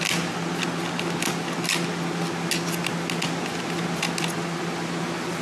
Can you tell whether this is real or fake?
real